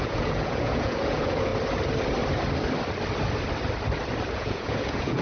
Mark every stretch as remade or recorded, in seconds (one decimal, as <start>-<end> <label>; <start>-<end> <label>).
0.0-1.5 remade; 1.5-4.3 recorded; 4.3-5.2 remade